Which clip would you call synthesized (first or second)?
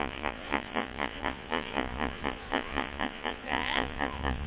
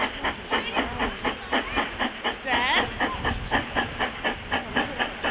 first